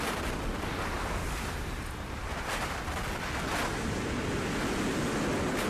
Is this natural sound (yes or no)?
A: yes